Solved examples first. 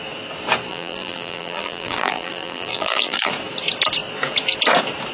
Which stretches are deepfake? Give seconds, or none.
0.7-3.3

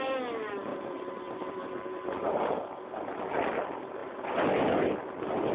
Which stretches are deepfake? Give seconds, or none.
0.7-2.4